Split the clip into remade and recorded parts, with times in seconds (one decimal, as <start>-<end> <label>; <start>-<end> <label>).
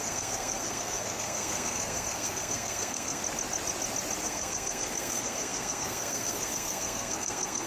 0.0-3.2 remade; 3.2-4.2 recorded; 4.2-7.7 remade